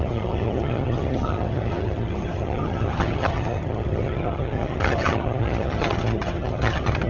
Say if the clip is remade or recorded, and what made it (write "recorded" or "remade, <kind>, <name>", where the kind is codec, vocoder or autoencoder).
remade, vocoder, HiFi-GAN